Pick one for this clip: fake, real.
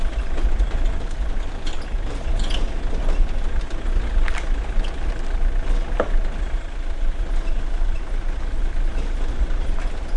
real